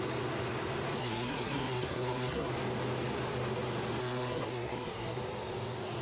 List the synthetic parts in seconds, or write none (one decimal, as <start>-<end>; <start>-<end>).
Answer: 1.0-2.5; 4.0-5.2